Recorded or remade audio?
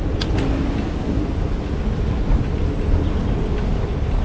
recorded